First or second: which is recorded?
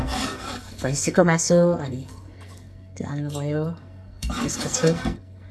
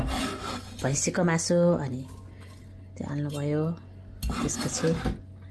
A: second